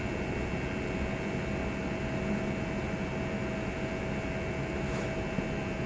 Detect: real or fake real